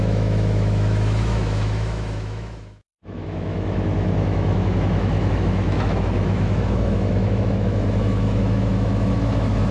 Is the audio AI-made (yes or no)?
yes